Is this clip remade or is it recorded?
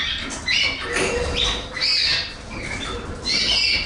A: recorded